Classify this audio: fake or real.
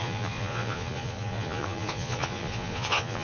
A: fake